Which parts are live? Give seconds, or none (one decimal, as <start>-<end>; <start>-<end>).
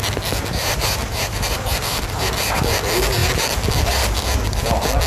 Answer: 0.0-0.6; 2.7-5.1